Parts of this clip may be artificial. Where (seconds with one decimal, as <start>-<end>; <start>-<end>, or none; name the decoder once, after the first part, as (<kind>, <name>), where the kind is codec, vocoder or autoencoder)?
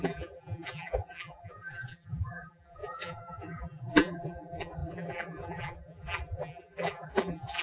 0.0-7.6 (vocoder, BigVGAN v2)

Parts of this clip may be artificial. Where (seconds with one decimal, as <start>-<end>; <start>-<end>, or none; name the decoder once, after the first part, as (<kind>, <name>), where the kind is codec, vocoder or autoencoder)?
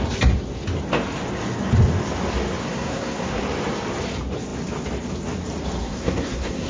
2.6-3.4 (codec, SNAC); 5.8-6.7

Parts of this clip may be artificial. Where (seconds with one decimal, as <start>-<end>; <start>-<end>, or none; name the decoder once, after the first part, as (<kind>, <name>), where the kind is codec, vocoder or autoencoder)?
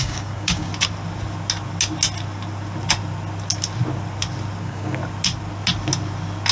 0.0-0.7 (codec, DAC); 4.6-5.0